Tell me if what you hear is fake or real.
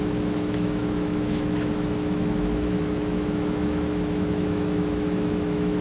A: fake